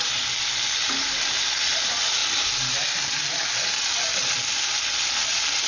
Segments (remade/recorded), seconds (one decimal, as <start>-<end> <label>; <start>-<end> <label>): 0.0-5.7 recorded